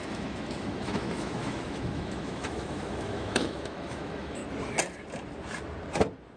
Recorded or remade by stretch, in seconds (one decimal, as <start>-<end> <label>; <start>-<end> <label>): 0.0-4.4 remade; 4.4-6.4 recorded

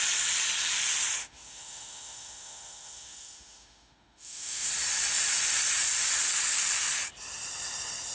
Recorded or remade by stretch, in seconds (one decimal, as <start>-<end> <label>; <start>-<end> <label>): 0.0-1.2 recorded; 1.2-4.7 remade; 4.7-8.1 recorded

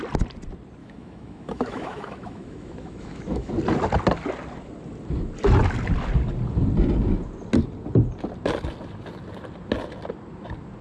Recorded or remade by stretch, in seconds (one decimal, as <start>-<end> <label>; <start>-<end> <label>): 0.0-0.8 recorded; 0.8-3.5 remade; 3.5-10.8 recorded

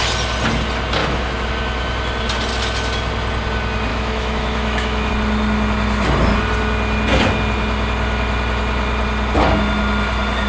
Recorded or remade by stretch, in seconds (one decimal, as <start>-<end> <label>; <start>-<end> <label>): 0.0-1.0 recorded; 1.0-1.5 remade; 1.5-3.9 recorded; 3.9-5.1 remade; 5.1-10.5 recorded

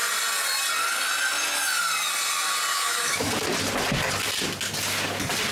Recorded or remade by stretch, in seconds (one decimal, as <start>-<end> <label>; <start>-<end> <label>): 0.0-2.7 recorded; 2.7-3.3 remade; 3.3-5.5 recorded

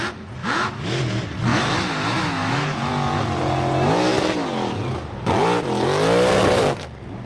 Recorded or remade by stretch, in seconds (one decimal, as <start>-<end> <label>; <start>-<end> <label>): 0.0-0.4 recorded; 0.4-1.0 remade; 1.0-1.5 recorded; 1.5-2.9 remade; 2.9-7.3 recorded